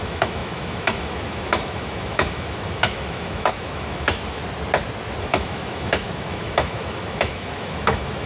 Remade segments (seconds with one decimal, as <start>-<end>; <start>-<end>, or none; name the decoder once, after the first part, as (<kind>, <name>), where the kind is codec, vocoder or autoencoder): 0.0-4.4 (autoencoder, DAC-VAE); 5.2-8.3